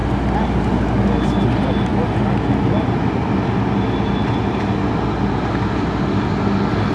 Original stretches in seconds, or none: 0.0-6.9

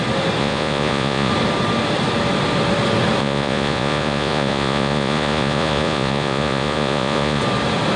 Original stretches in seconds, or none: 0.0-0.4; 1.3-3.2; 7.4-8.0